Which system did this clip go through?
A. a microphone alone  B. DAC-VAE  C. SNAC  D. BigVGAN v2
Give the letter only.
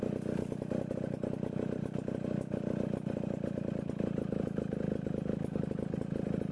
A